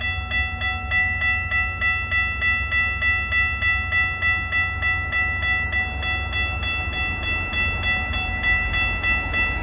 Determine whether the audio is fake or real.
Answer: real